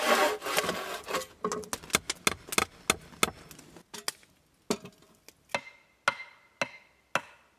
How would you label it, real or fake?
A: real